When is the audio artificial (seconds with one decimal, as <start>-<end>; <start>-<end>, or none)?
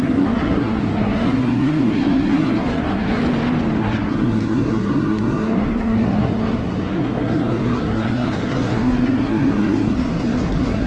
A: 0.0-3.2; 3.8-10.9